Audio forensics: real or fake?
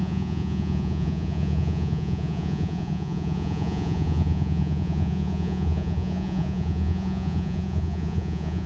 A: fake